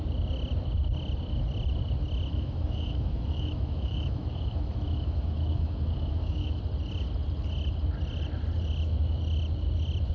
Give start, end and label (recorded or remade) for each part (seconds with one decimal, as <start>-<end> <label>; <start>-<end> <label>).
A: 0.0-2.3 recorded; 2.3-6.6 remade; 6.6-10.1 recorded